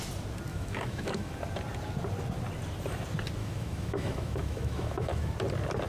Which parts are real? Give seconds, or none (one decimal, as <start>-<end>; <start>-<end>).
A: 0.0-0.5; 1.4-3.4; 5.3-5.9

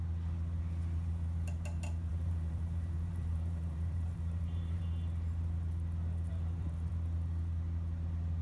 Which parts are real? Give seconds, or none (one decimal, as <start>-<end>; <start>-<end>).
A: 0.0-2.1; 4.8-6.3; 6.9-8.4

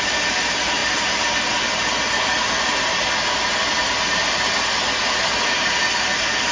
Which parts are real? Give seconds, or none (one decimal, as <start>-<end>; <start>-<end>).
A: 0.0-6.5